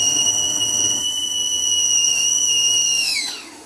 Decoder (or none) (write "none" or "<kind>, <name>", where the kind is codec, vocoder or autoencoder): autoencoder, DAC-VAE